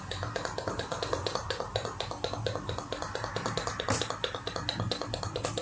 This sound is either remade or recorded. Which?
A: recorded